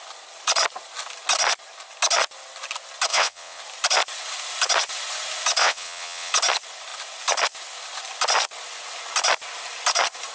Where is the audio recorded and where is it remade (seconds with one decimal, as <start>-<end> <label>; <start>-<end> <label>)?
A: 0.0-3.1 recorded; 3.1-3.6 remade; 3.6-5.6 recorded; 5.6-6.3 remade; 6.3-10.3 recorded